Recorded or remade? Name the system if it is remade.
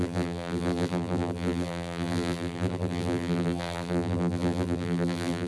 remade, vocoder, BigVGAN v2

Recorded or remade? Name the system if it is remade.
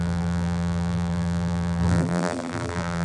remade, vocoder, BigVGAN v2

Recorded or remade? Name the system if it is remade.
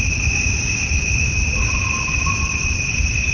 remade, vocoder, BigVGAN v2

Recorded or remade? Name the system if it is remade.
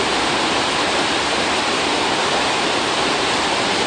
remade, vocoder, BigVGAN v2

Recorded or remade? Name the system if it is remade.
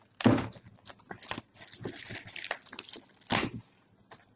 recorded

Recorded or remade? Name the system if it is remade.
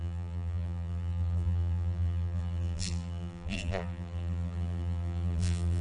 remade, vocoder, BigVGAN v2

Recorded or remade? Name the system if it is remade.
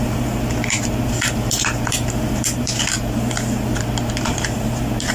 remade, vocoder, BigVGAN v2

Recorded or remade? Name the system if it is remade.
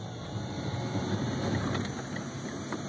remade, vocoder, BigVGAN v2